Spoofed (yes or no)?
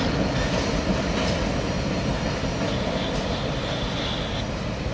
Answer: no